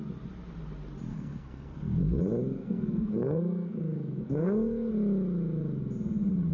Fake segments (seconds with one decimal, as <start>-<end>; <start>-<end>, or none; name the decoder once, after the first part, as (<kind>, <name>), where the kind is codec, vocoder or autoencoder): 1.1-2.2 (codec, SNAC); 2.6-4.9